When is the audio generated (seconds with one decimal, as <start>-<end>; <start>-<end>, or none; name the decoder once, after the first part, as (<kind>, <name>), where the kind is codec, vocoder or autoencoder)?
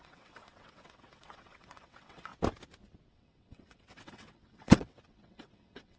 0.0-2.3 (vocoder, WaveNeXt); 3.1-6.0